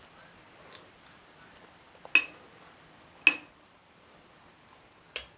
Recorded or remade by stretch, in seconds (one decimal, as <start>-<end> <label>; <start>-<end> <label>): 0.0-5.4 recorded